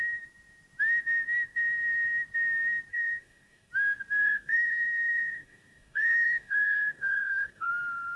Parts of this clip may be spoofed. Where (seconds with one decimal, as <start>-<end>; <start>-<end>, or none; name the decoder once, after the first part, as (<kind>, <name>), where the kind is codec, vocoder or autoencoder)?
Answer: 2.9-3.7 (codec, DAC); 4.2-7.7